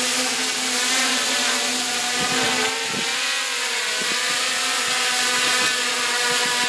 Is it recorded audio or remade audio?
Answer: recorded